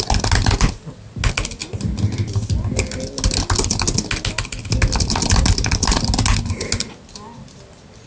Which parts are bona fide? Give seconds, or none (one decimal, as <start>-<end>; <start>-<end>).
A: 0.0-8.1